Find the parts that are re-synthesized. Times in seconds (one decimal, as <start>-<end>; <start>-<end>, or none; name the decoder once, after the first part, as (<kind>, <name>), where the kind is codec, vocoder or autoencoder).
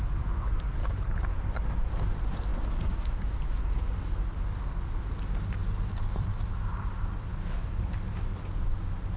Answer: 0.8-1.3 (codec, HILCodec); 7.3-7.8